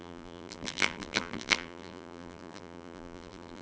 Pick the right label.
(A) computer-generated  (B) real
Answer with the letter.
A